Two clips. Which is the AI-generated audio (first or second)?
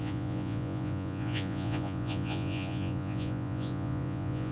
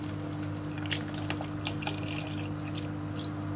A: first